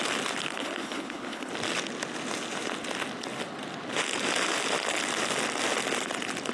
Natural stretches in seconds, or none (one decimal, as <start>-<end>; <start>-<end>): 0.0-0.5; 1.5-6.5